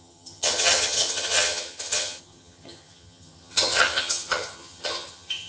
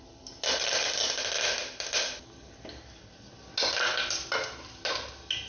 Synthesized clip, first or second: first